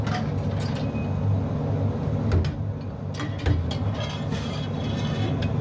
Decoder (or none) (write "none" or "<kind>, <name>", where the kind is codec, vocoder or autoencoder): none